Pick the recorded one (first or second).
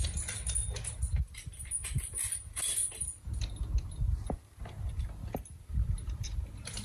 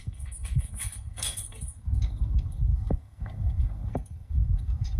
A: first